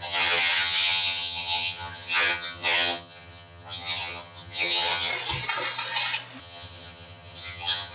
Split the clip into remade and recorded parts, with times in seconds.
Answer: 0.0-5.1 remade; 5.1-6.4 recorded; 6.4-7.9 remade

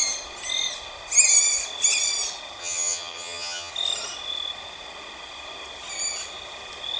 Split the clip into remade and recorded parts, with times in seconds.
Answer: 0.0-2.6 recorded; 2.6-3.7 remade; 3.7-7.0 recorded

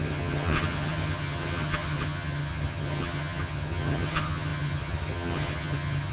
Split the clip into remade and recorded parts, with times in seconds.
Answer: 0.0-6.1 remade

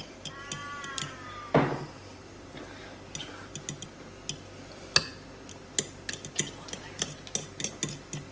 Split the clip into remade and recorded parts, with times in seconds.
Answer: 0.0-8.3 recorded

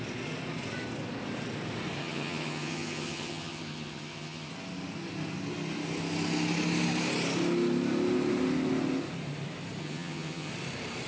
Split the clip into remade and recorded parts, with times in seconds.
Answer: 0.0-2.0 recorded; 2.0-4.5 remade; 4.5-9.8 recorded; 9.8-10.5 remade; 10.5-11.1 recorded